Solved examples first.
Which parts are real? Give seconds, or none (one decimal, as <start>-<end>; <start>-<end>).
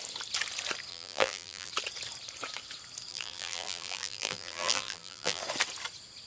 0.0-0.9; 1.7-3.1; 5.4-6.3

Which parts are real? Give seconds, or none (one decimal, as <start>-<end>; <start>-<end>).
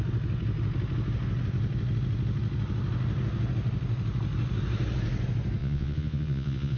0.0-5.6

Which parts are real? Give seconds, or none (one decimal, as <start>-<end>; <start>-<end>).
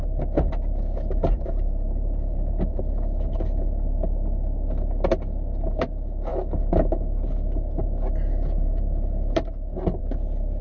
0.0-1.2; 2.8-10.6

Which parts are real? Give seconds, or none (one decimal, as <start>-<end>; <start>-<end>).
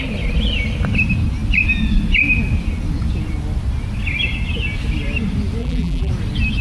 0.0-5.6; 6.1-6.6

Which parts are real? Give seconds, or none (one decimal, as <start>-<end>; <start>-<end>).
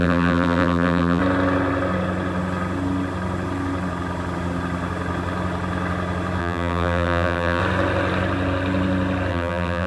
1.2-6.4; 7.6-9.3